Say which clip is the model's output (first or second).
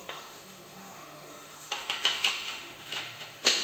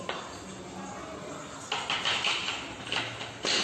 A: first